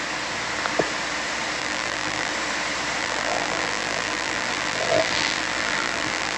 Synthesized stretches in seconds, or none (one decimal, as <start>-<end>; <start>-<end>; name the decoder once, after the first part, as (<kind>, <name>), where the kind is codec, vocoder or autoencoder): 1.6-2.3 (vocoder, BigVGAN v2); 3.0-6.4